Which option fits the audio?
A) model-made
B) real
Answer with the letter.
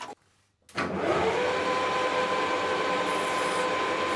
B